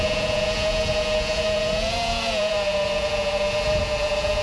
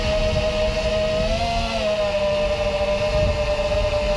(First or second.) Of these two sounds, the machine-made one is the first